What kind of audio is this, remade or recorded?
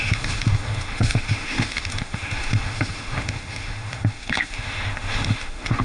remade